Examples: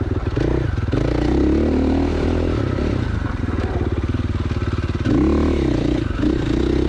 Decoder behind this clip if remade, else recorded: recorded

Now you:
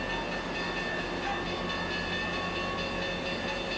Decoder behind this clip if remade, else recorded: recorded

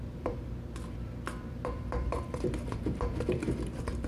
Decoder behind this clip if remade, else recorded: remade, vocoder, BigVGAN v2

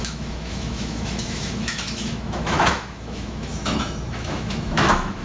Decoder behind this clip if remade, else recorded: remade, autoencoder, DAC-VAE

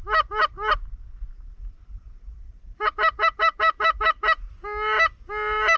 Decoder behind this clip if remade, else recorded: recorded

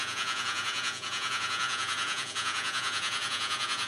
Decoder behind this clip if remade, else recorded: remade, vocoder, Vocos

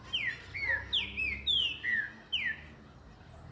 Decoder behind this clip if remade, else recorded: recorded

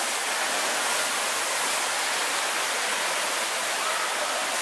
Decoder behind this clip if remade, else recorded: recorded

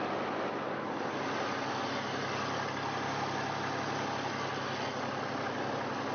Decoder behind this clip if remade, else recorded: recorded